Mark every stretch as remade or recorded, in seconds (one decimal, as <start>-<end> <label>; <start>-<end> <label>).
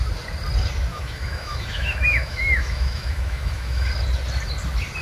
0.0-0.9 recorded; 0.9-3.9 remade; 3.9-5.0 recorded